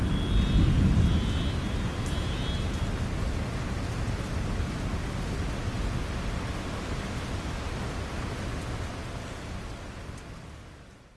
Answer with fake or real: real